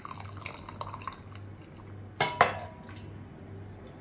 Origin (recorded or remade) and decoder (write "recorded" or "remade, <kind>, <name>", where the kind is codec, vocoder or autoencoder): recorded